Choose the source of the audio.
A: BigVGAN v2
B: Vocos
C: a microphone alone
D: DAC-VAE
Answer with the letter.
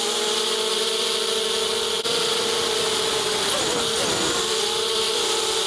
A